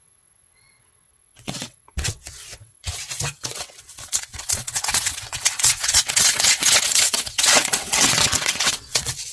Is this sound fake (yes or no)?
yes